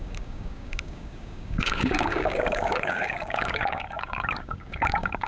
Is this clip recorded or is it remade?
remade